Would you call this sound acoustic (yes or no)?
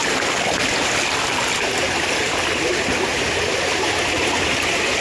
yes